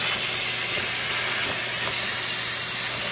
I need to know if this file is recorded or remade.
recorded